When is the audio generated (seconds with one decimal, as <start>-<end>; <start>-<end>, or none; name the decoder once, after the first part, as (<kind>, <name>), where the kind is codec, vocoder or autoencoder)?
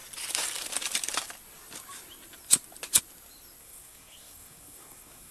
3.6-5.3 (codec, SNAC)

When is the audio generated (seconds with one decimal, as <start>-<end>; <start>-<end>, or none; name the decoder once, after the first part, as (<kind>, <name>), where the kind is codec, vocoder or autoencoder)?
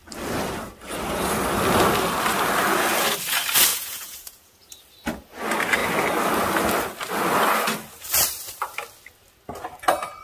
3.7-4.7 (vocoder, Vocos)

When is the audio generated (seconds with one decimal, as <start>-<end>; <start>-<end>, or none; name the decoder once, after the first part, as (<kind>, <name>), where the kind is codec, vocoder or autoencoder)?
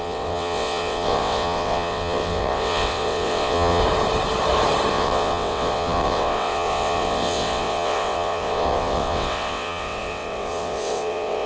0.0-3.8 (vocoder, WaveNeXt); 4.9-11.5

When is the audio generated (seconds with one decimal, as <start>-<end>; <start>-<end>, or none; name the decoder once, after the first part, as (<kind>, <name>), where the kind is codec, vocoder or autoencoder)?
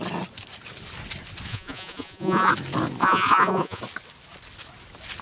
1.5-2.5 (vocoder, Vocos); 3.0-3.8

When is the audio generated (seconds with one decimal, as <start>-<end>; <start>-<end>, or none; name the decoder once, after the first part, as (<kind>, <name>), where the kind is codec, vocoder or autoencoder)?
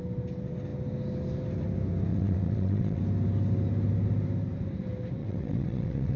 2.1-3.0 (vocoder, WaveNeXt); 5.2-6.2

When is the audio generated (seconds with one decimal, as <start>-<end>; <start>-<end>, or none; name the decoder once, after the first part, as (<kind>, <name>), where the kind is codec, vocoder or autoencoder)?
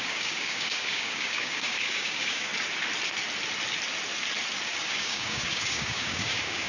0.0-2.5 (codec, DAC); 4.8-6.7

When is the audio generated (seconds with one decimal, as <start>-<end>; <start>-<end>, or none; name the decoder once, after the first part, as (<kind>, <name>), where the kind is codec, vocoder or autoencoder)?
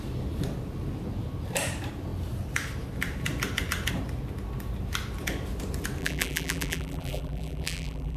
6.0-8.2 (vocoder, BigVGAN v2)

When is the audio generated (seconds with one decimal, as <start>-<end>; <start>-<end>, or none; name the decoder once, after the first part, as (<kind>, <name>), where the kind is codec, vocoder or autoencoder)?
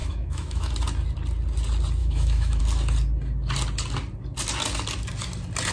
0.0-0.7 (autoencoder, DAC-VAE); 2.0-2.6